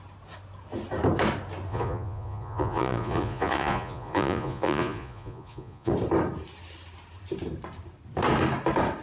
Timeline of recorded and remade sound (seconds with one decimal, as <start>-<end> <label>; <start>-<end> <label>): 0.0-1.7 recorded; 1.7-5.9 remade; 5.9-9.0 recorded